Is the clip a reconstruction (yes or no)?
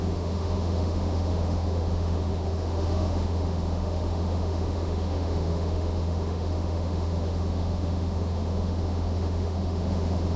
yes